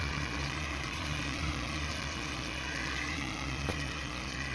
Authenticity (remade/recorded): remade